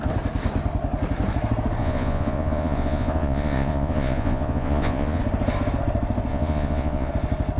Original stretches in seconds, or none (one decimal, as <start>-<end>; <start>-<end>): 0.0-1.8; 5.2-6.3; 7.1-7.6